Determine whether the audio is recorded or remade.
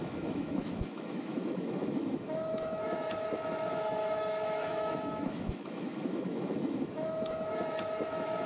remade